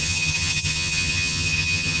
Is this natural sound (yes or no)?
no